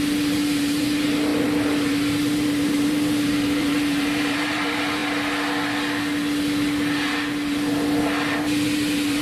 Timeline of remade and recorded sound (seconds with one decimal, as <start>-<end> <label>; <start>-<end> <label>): 0.0-5.0 remade; 5.0-7.5 recorded; 7.5-9.2 remade